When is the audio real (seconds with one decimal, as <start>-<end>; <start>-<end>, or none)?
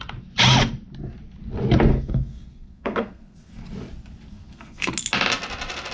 0.0-1.9; 3.6-4.3; 4.9-5.9